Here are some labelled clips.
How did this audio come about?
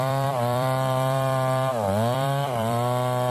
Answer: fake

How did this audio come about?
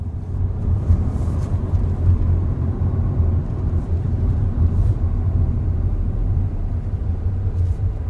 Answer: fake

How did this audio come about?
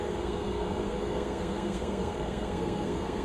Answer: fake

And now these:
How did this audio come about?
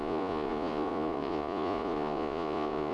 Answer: fake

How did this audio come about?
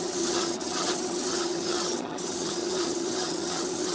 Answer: fake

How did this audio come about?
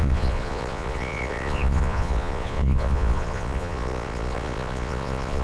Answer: fake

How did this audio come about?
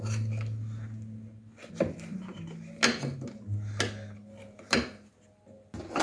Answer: real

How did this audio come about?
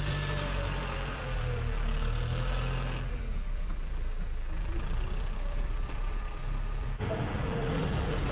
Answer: fake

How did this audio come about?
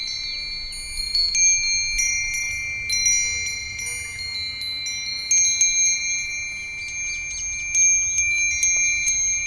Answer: real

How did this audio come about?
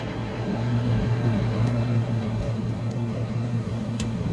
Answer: fake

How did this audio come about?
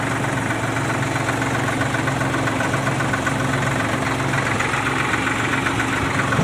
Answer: real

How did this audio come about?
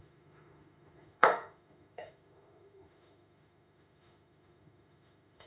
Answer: fake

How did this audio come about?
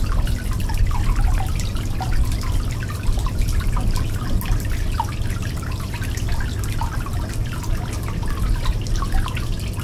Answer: real